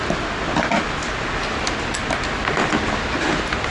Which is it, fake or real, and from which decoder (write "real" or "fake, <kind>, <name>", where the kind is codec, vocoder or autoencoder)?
real